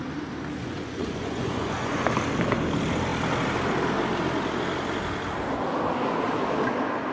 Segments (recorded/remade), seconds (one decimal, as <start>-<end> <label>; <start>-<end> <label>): 0.0-0.6 recorded; 0.6-2.1 remade; 2.1-7.1 recorded